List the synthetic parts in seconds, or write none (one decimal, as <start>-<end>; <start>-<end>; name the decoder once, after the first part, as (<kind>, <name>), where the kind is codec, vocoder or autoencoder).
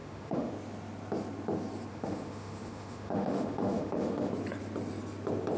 0.0-0.5 (autoencoder, DAC-VAE); 1.9-4.3